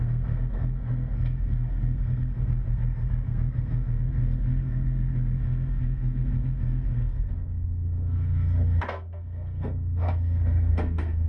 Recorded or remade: remade